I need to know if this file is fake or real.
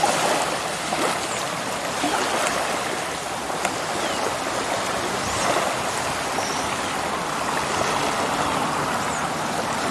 real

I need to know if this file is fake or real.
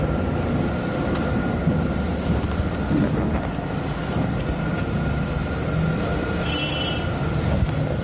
real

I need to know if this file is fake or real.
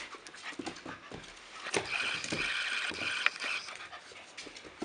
real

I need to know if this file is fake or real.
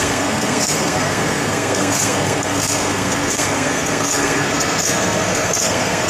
fake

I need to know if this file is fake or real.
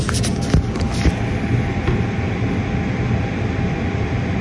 real